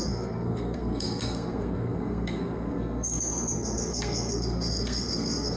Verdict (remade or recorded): remade